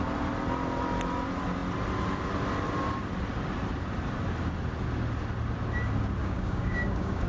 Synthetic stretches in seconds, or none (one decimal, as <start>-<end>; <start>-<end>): 6.2-7.3